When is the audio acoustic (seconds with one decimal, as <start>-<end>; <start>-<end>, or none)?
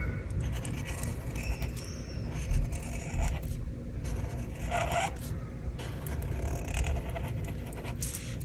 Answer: 0.0-8.4